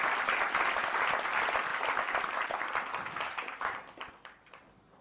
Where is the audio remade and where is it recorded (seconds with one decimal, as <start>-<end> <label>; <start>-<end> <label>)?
0.0-5.0 recorded